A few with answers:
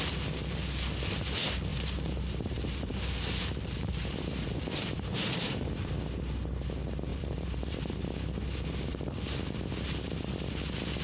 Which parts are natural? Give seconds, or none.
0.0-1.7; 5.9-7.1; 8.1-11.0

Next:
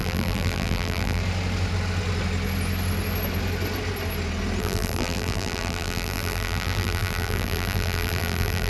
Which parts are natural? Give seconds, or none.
1.2-4.6

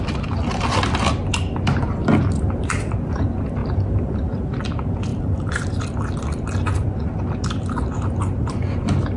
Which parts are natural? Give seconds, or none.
0.0-2.0; 2.9-3.6; 4.3-5.1; 6.2-9.2